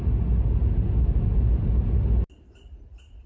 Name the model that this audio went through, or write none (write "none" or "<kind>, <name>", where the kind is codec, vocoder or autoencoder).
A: none